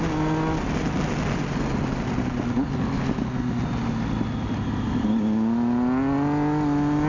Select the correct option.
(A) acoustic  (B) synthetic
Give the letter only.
A